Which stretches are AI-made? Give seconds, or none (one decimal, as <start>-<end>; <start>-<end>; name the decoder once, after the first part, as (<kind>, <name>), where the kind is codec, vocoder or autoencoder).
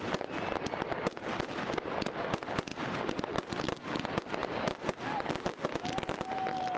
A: none